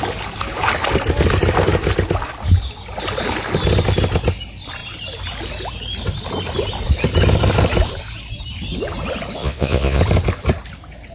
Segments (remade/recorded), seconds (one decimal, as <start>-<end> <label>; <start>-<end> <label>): 0.0-9.4 recorded; 9.4-10.0 remade; 10.0-11.1 recorded